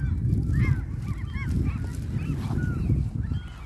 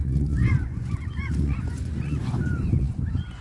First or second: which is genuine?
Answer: first